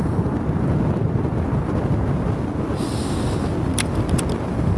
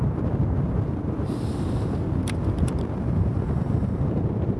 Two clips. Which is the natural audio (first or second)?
first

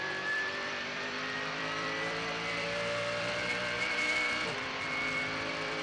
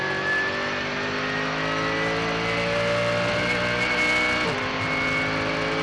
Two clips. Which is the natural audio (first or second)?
second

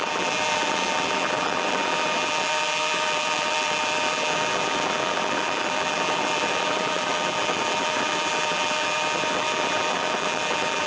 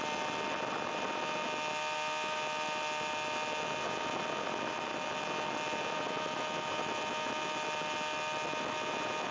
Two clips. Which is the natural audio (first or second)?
second